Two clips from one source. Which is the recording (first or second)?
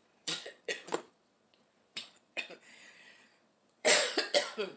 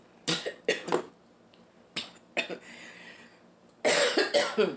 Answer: second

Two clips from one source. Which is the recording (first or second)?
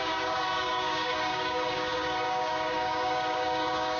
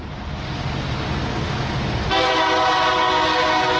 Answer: second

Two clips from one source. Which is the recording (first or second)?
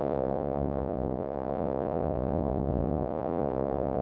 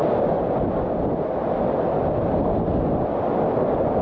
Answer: second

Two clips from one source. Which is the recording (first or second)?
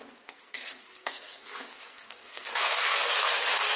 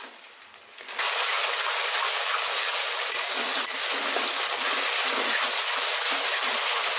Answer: second